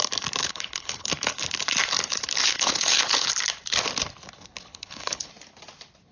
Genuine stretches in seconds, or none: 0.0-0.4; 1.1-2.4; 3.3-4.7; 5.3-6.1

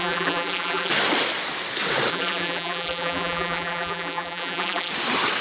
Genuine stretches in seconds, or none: 0.9-2.1; 4.9-5.4

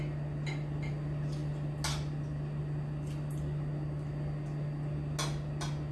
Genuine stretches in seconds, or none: 0.0-5.9

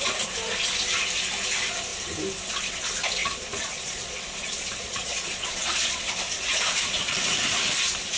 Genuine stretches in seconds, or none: 0.0-3.2; 6.1-6.5; 7.1-8.2